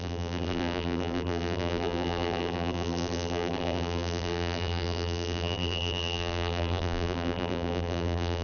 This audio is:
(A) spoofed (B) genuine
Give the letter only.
A